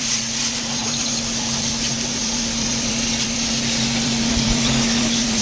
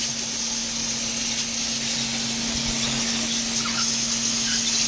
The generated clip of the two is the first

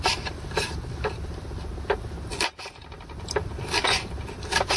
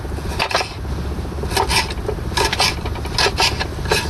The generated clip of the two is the first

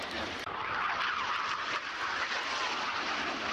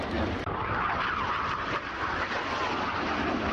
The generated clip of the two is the first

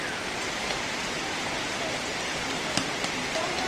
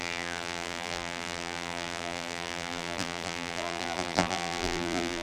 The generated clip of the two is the second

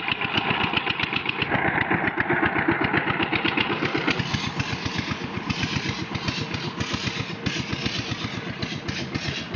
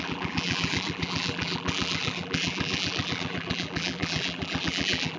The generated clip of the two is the second